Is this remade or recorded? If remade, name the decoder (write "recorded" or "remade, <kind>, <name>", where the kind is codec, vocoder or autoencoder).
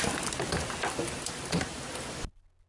recorded